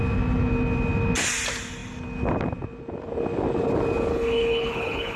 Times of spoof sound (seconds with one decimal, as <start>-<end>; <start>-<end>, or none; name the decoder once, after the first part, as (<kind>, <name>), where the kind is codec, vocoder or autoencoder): 4.1-5.2 (codec, HILCodec)